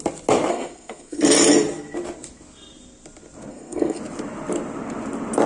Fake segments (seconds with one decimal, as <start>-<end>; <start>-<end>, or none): 0.5-1.2; 3.5-4.0